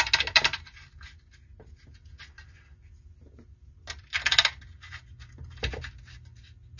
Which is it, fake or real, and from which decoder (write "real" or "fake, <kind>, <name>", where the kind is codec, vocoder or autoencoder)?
real